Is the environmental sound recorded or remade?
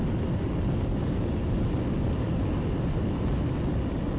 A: recorded